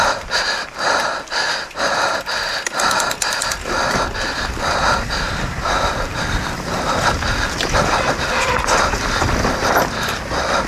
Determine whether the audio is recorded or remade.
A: remade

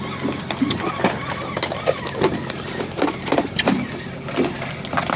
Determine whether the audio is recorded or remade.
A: recorded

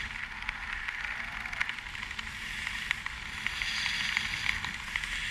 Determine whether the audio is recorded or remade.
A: recorded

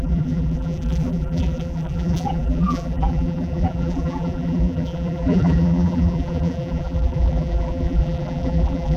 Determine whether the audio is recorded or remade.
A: remade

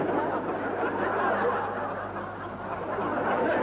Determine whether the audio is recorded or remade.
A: recorded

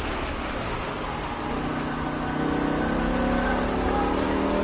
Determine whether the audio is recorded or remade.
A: recorded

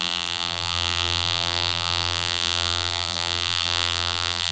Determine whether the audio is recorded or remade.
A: remade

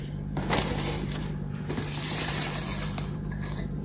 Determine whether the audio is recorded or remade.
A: remade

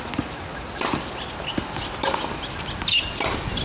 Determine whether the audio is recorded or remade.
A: recorded